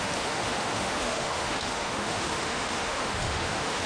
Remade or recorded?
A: remade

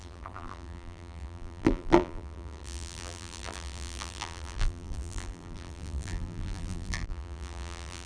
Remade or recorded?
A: remade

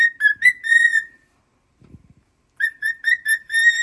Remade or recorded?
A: recorded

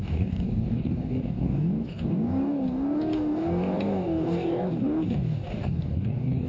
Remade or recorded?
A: remade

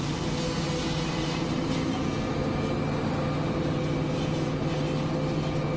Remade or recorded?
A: recorded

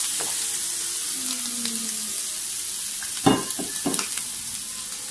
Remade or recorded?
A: recorded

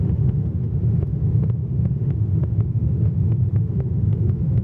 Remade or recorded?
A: remade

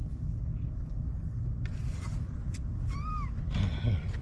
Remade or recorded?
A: recorded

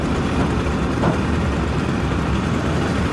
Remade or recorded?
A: recorded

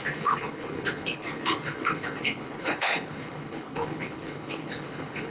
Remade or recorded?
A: remade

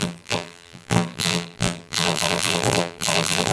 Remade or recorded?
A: remade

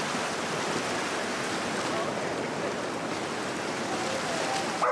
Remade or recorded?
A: recorded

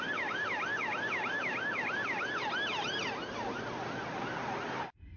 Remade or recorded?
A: recorded